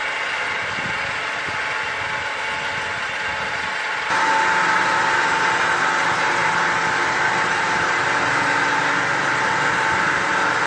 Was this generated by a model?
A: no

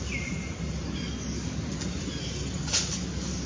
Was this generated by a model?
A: no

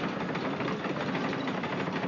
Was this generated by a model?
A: no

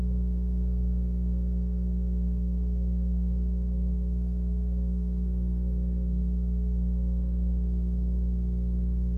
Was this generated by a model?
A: yes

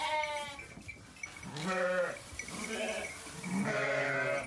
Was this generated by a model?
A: no